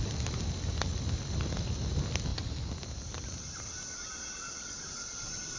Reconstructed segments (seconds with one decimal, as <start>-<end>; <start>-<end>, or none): none